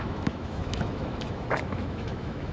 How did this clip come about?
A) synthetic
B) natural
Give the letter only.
A